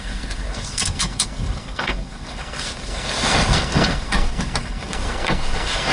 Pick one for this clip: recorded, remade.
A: remade